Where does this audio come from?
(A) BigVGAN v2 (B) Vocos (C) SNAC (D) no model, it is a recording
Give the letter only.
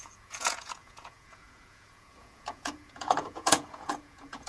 B